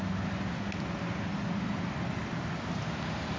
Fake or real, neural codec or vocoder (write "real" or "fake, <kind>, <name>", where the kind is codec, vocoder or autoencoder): real